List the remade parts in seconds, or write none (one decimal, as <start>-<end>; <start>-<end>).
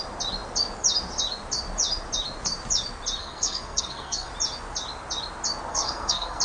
3.2-4.3; 5.7-6.4